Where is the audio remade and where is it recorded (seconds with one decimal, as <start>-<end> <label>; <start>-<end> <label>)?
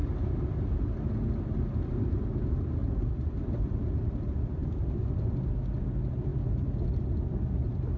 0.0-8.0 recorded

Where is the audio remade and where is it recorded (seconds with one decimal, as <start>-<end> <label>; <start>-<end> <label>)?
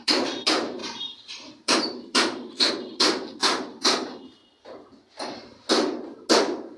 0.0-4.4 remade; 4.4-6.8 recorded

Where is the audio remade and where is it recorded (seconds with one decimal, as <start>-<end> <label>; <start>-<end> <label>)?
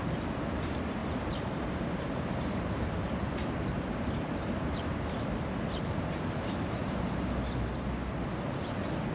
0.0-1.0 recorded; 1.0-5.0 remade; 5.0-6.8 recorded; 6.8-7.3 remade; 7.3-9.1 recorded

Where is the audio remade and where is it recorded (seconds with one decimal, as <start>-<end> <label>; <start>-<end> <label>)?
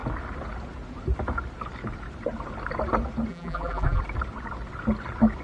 0.0-3.3 recorded; 3.3-4.0 remade; 4.0-5.4 recorded